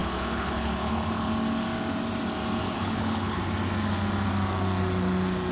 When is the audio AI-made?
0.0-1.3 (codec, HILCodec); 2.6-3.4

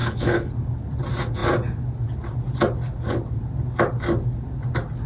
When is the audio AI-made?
0.0-0.5 (codec, HILCodec)